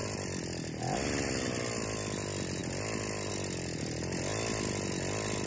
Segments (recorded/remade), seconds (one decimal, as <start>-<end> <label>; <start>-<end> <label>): 0.0-5.5 recorded